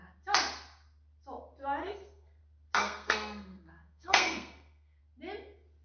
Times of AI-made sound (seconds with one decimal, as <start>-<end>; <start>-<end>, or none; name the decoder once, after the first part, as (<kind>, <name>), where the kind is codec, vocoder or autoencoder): 1.8-2.4 (codec, SNAC); 2.8-5.0